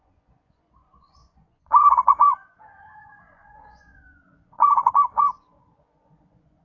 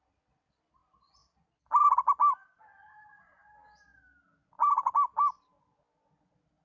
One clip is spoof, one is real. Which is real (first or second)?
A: second